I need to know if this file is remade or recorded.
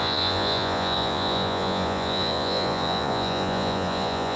remade